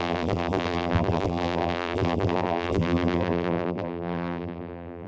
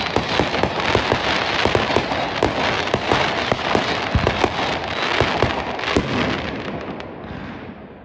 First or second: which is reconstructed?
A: first